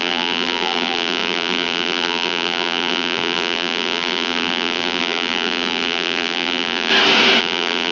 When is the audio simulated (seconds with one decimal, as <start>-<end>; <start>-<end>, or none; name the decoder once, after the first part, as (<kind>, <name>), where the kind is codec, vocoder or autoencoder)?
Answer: 0.0-6.9 (vocoder, BigVGAN v2); 7.4-7.9